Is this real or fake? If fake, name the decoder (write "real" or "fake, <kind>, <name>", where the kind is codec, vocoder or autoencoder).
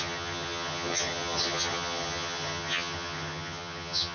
fake, vocoder, HiFi-GAN